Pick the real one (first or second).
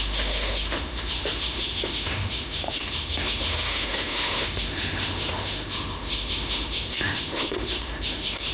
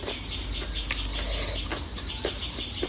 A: second